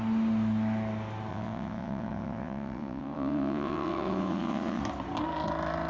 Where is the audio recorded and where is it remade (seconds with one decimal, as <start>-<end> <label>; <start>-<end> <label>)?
0.0-1.3 recorded; 1.3-4.8 remade; 4.8-5.9 recorded